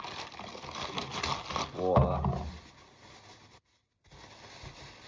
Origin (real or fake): real